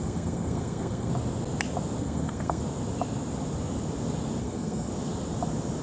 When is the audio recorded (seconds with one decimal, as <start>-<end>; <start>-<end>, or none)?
1.1-2.0; 2.6-4.4; 4.9-5.8